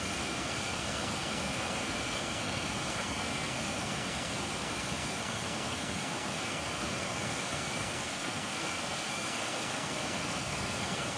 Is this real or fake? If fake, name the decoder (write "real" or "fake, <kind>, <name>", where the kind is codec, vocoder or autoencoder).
fake, codec, SNAC